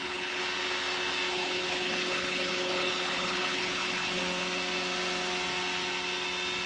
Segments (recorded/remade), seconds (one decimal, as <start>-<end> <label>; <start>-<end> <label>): 0.0-0.4 remade; 0.4-1.3 recorded; 1.3-4.2 remade; 4.2-6.7 recorded